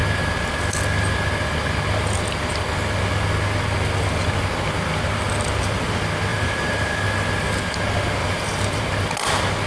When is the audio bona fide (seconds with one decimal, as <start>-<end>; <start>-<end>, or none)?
0.0-6.3; 6.9-8.2; 8.8-9.7